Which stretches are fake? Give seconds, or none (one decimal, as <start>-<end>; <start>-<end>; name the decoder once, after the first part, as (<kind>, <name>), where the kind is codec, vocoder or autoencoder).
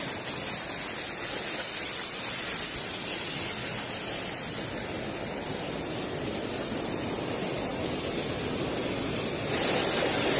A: none